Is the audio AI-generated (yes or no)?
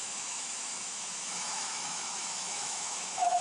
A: yes